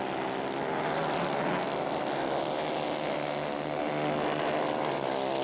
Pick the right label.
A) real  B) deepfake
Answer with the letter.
A